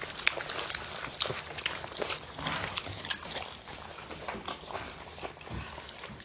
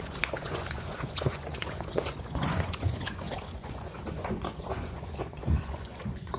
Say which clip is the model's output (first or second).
second